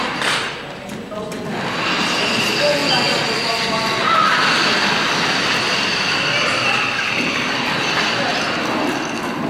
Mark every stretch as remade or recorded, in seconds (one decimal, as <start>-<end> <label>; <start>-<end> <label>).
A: 0.0-9.5 recorded